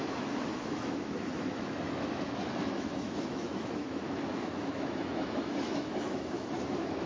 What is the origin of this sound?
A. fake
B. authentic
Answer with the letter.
A